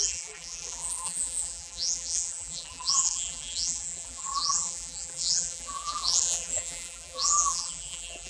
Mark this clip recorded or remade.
remade